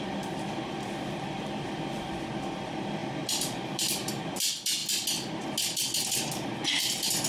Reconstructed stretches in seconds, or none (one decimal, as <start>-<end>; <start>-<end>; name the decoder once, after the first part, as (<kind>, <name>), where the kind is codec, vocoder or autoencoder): 0.0-4.8 (vocoder, BigVGAN v2); 6.8-7.3